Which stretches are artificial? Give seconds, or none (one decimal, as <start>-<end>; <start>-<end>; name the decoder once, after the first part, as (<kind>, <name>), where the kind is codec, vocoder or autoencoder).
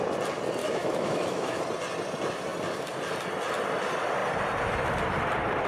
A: 0.6-1.6 (autoencoder, DAC-VAE)